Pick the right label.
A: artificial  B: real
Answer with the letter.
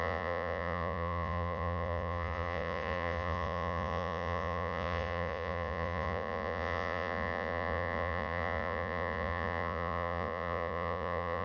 A